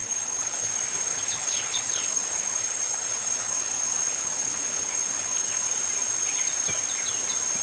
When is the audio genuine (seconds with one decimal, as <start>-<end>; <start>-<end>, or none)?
0.7-1.1; 5.6-7.6